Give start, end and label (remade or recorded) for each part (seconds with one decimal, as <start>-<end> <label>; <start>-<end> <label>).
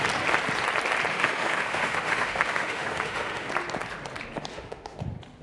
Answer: 0.0-1.1 recorded; 1.1-3.5 remade; 3.5-4.5 recorded; 4.5-5.0 remade; 5.0-5.4 recorded